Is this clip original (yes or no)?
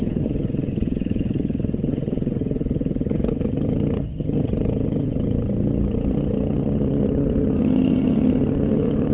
no